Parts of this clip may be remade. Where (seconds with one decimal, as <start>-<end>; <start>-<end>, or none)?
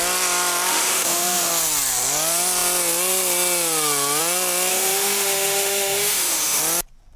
0.7-1.5; 4.7-6.6